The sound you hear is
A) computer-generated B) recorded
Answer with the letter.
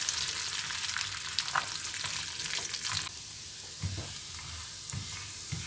B